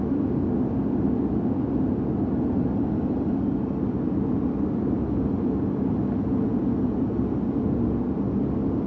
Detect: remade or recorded recorded